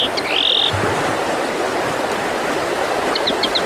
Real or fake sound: real